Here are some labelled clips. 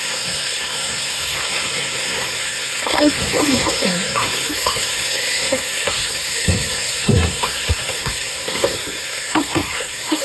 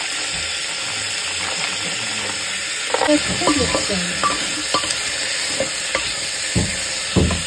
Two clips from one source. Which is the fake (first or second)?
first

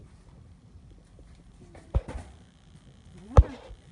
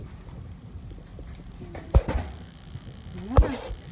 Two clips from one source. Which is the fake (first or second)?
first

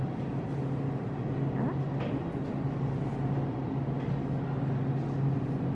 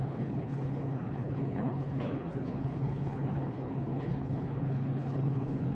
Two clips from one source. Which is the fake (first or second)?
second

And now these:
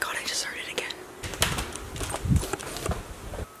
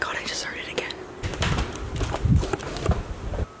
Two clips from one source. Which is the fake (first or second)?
second